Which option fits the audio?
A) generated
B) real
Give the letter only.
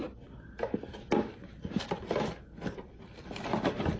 B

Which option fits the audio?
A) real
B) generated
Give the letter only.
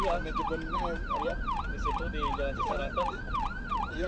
A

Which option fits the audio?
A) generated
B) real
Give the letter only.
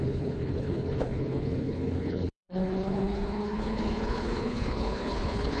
A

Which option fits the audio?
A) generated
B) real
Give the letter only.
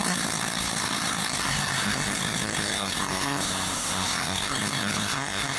A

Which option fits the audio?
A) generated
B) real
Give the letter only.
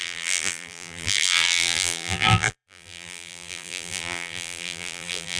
A